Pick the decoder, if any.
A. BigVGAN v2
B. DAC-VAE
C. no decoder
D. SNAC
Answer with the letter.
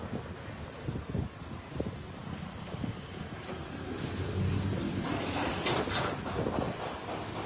C